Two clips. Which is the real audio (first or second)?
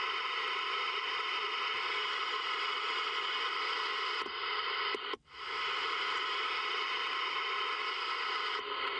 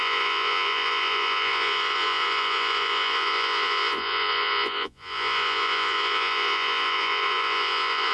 first